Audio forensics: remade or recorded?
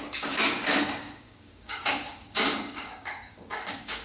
remade